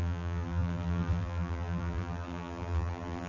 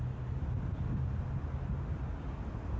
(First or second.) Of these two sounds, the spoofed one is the first